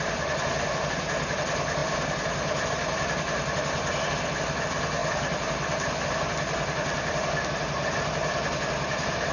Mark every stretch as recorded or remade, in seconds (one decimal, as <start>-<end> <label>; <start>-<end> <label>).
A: 0.0-9.3 recorded

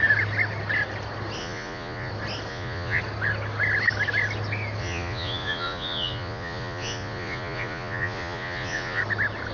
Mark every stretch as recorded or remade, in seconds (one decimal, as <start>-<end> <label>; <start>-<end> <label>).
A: 0.0-1.4 recorded; 1.4-2.1 remade; 2.1-2.5 recorded; 2.5-3.0 remade; 3.0-4.8 recorded; 4.8-9.0 remade; 9.0-9.5 recorded

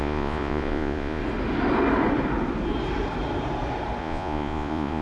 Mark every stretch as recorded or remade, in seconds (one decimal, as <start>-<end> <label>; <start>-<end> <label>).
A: 0.0-1.2 remade; 1.2-4.0 recorded; 4.0-5.0 remade